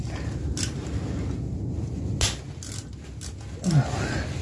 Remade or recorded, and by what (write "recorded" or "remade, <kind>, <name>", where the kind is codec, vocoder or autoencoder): recorded